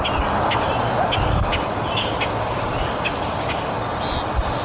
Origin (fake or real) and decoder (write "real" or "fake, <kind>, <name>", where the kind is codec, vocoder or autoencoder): real